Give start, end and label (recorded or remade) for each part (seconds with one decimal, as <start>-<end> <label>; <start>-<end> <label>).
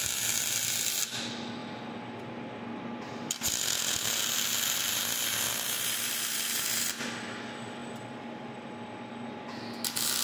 0.0-10.2 recorded